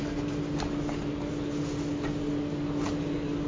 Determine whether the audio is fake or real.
real